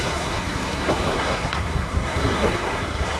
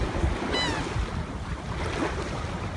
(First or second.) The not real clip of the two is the first